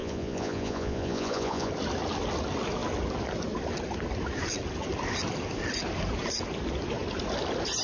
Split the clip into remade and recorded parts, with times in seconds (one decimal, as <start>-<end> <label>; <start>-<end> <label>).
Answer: 0.0-1.7 remade; 1.7-7.8 recorded